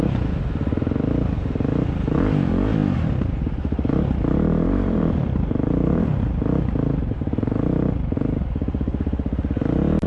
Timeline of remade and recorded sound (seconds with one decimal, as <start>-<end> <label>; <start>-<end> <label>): 0.0-2.8 recorded; 2.8-6.1 remade; 6.1-7.0 recorded; 7.0-9.4 remade; 9.4-10.1 recorded